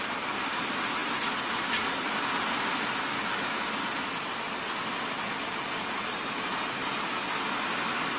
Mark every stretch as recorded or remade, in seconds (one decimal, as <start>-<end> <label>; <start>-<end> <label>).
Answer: 0.0-8.2 recorded